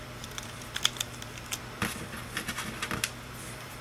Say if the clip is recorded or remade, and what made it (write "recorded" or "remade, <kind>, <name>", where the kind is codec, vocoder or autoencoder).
remade, vocoder, BigVGAN v2